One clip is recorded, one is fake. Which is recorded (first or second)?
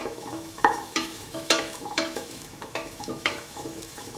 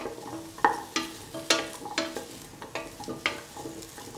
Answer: second